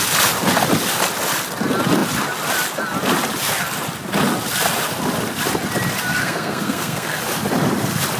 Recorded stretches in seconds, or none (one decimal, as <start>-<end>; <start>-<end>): 0.0-6.2; 7.2-8.2